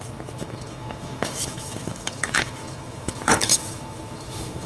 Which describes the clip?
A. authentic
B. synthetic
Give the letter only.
B